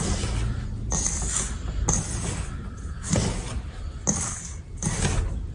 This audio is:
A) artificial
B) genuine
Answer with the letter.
B